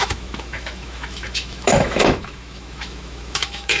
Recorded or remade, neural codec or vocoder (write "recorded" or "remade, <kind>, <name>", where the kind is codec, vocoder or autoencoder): remade, autoencoder, DAC-VAE